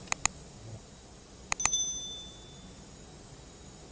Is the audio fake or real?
real